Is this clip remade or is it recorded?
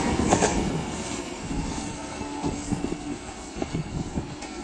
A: remade